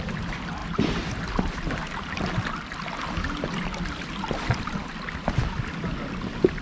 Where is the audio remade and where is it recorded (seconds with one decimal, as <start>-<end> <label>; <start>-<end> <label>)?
0.0-6.6 recorded

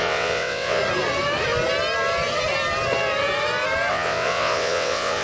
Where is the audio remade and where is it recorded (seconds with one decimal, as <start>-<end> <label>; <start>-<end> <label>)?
0.0-0.8 remade; 0.8-3.9 recorded; 3.9-5.2 remade